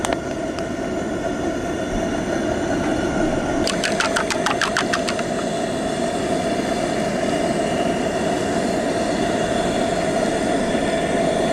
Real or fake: real